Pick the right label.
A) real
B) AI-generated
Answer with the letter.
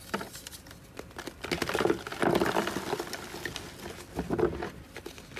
A